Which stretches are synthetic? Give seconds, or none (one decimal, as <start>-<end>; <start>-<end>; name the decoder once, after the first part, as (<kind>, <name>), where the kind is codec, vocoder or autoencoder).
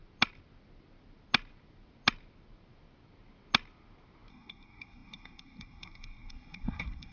4.3-7.1 (codec, SNAC)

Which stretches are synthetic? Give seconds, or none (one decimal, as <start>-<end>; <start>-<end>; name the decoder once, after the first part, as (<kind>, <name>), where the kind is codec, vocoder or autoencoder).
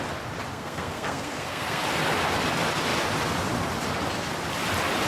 0.5-1.8 (codec, SNAC)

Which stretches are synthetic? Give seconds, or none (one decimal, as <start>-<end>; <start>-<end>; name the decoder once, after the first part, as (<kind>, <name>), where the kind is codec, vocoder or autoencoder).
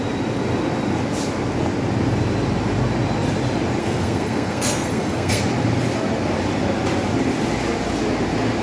3.8-5.4 (codec, SNAC)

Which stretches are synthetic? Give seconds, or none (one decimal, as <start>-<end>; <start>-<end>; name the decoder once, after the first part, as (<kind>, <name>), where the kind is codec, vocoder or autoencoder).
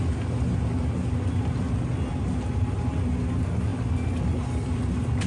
none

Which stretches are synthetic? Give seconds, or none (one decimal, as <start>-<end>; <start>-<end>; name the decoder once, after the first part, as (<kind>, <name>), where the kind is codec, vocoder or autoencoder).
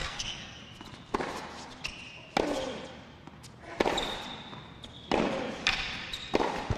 0.0-0.6 (codec, SNAC)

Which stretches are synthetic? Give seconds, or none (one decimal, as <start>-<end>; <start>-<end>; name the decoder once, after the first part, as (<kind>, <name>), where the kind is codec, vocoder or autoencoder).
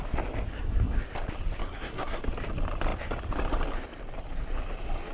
0.5-1.0 (codec, SNAC); 1.6-2.2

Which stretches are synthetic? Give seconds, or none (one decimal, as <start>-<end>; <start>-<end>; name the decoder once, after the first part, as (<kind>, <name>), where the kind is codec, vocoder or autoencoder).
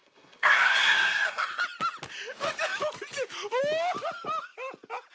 0.0-1.6 (codec, SNAC)